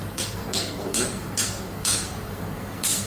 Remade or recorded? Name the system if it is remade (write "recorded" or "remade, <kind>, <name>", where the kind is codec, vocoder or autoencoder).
remade, codec, SNAC